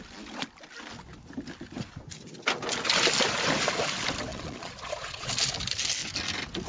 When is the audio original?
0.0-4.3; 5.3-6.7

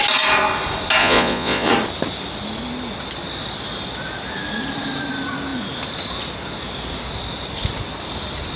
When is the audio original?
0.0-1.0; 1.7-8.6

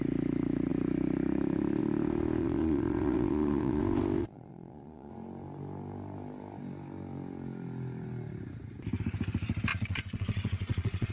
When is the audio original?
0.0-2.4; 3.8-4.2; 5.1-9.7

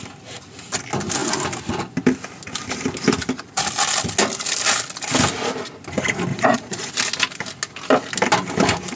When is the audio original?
0.0-6.3; 6.9-9.0

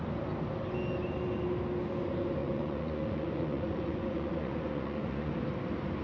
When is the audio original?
0.0-2.4; 5.3-6.0

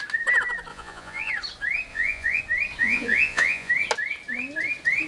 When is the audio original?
0.0-0.7; 1.3-1.9; 2.4-2.8; 3.7-5.1

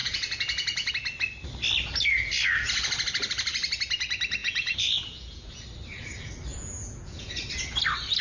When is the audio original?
0.9-4.4; 5.6-6.5; 7.3-8.2